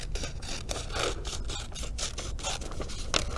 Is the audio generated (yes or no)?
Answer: no